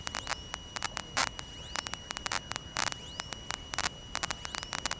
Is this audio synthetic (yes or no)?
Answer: no